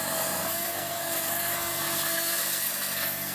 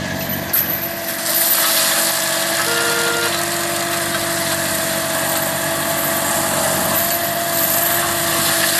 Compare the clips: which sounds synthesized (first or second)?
first